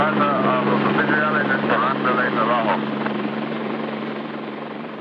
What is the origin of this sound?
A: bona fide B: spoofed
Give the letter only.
B